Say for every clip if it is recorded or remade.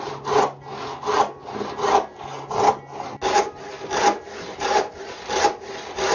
recorded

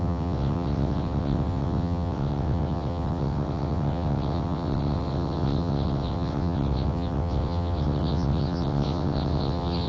remade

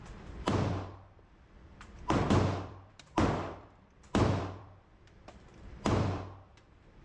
remade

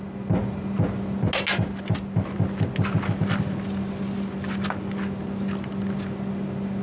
recorded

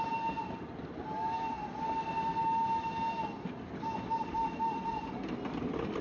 recorded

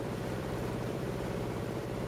remade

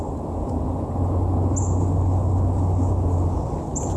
recorded